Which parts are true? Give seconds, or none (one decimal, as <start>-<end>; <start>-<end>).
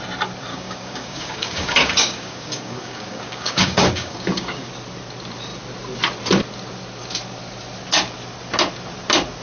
0.0-0.5; 4.7-9.4